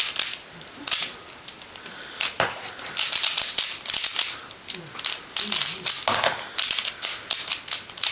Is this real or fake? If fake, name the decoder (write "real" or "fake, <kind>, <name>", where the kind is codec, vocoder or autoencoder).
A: real